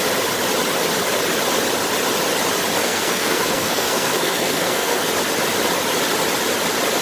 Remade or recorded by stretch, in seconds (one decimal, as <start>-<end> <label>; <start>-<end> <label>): 0.0-2.8 recorded; 2.8-5.1 remade; 5.1-7.0 recorded